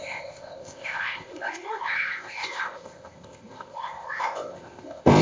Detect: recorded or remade remade